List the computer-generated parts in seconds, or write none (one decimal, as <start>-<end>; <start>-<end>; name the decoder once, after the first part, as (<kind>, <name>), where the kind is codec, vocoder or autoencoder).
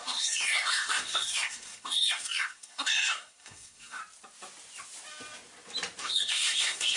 0.0-4.0 (codec, SNAC); 6.0-7.0